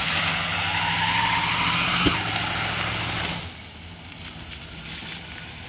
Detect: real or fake real